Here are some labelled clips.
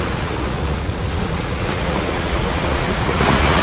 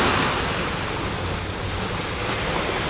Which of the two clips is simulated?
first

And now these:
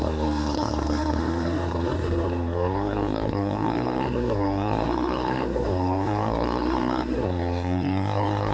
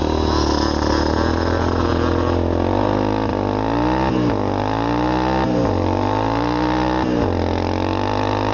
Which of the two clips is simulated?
first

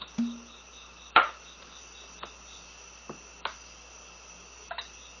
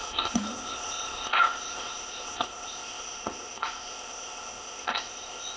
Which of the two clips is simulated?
second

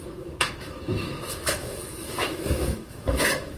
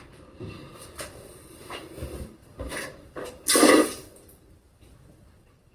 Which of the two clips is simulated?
first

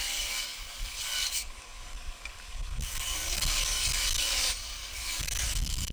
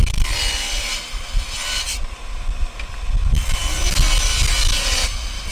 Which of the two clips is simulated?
first